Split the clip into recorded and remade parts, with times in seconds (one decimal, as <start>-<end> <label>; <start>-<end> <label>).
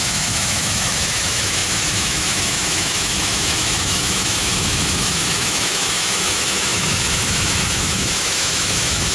0.0-9.1 remade